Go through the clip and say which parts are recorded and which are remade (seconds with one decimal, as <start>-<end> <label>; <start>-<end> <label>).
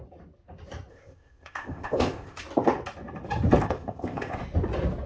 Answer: 0.0-0.9 recorded; 0.9-2.4 remade; 2.4-3.6 recorded; 3.6-4.4 remade; 4.4-5.1 recorded